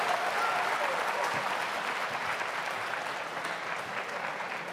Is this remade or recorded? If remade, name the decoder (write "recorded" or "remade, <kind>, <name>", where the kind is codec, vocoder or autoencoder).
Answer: recorded